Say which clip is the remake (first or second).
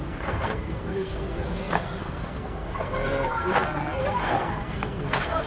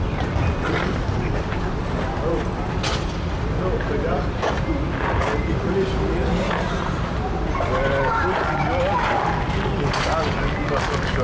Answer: first